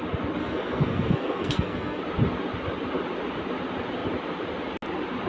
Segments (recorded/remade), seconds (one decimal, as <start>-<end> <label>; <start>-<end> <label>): 0.0-0.4 recorded; 0.4-2.0 remade; 2.0-5.3 recorded